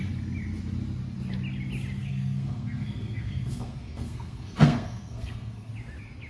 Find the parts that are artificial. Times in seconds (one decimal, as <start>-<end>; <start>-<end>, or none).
2.0-5.7